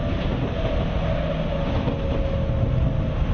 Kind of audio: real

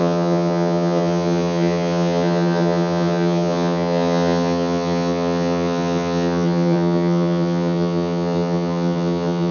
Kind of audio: fake